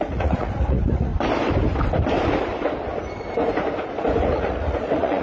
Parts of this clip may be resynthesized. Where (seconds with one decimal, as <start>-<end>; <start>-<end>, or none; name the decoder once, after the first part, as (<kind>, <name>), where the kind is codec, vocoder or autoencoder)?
0.0-1.1 (vocoder, Vocos); 4.2-5.2